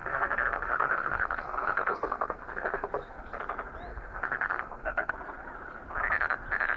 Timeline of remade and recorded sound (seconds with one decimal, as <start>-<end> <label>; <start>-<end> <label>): 0.0-3.4 remade; 3.4-3.9 recorded; 3.9-5.1 remade; 5.1-6.8 recorded